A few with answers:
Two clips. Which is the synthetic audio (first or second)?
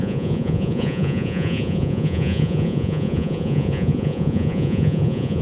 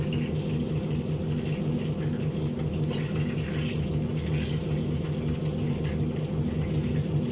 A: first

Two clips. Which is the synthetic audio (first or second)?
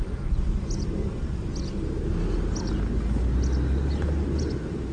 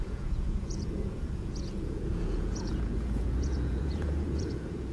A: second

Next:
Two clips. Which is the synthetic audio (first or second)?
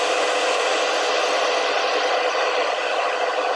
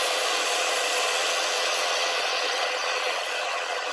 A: second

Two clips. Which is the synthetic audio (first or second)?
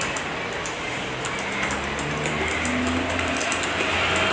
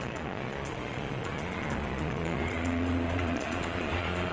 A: second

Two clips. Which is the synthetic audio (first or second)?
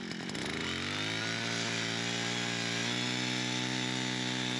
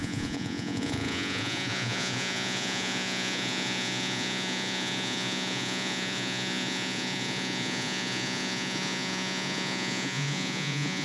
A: second